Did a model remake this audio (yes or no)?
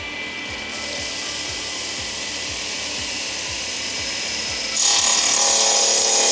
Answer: no